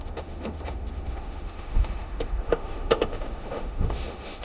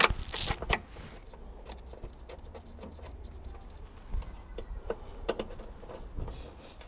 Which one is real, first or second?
second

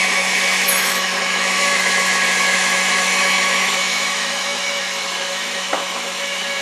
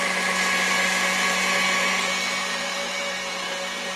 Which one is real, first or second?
second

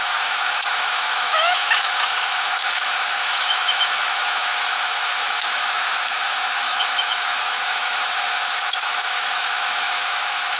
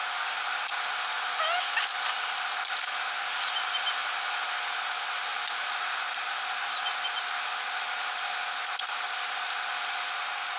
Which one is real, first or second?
second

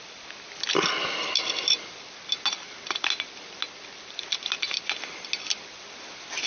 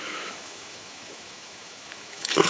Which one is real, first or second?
first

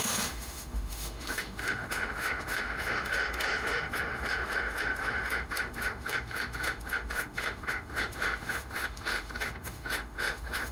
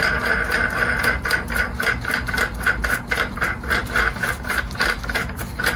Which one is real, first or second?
second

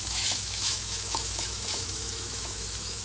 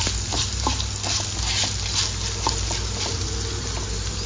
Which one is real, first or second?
second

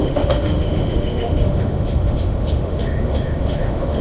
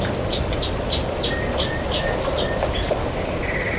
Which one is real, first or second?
second